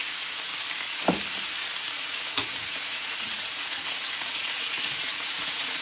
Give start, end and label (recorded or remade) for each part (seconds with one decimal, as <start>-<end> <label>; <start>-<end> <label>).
0.0-0.5 remade; 0.5-1.9 recorded; 1.9-5.8 remade